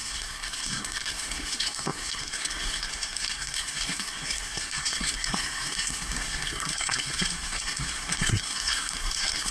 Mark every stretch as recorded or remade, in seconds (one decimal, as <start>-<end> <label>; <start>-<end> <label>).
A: 0.0-9.5 remade